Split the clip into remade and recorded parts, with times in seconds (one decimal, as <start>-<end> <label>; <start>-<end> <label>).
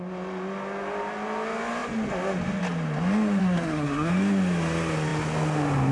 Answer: 0.0-3.4 recorded; 3.4-4.1 remade; 4.1-5.9 recorded